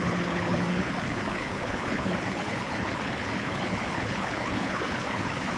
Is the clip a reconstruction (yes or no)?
yes